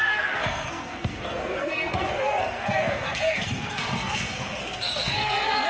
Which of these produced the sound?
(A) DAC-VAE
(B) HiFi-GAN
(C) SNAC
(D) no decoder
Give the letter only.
C